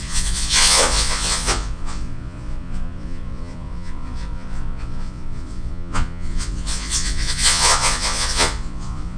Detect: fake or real fake